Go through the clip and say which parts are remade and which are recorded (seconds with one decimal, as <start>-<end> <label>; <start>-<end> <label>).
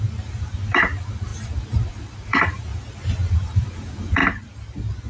0.0-2.7 remade; 2.7-3.3 recorded; 3.3-4.2 remade; 4.2-5.1 recorded